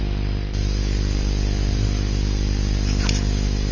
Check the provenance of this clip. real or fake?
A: real